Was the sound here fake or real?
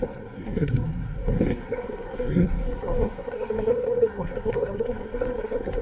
fake